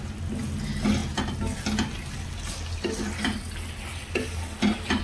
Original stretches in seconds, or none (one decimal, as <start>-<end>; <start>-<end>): 0.0-5.0